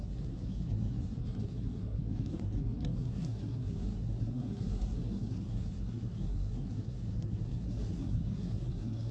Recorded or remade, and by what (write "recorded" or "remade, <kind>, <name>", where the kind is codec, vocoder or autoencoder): remade, codec, SNAC